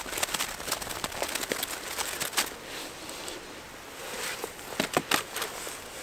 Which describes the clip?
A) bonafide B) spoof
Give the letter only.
A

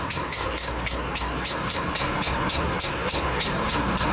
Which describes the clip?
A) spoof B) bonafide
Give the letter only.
A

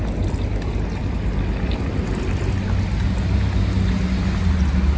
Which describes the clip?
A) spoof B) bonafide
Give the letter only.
B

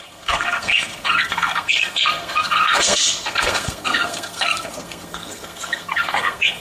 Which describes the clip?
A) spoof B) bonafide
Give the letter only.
A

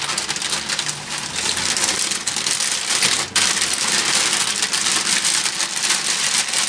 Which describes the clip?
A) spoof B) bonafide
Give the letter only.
B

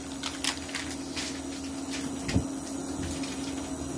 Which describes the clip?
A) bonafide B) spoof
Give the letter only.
A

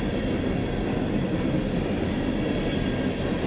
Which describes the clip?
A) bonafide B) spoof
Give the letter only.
A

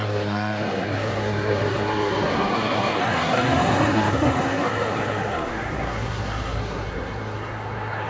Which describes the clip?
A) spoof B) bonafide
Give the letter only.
A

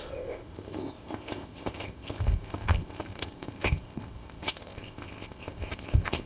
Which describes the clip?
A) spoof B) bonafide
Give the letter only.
A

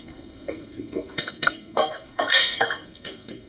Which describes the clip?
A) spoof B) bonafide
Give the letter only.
A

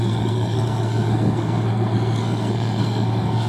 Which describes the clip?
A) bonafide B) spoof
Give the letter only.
B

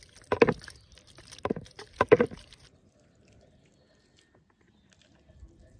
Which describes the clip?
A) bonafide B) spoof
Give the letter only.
A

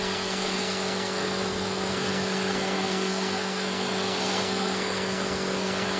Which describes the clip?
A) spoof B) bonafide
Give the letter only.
A